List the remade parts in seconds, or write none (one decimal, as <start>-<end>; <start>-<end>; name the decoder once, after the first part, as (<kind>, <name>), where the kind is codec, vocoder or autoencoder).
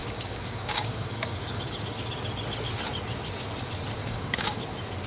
0.0-2.1 (codec, DAC); 4.0-4.6